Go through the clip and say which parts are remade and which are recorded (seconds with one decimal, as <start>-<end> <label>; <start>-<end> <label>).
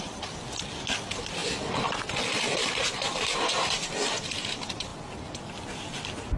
0.0-2.6 recorded; 2.6-3.9 remade; 3.9-6.4 recorded